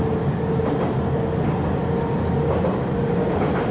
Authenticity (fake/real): real